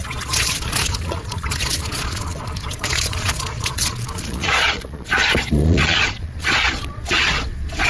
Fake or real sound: fake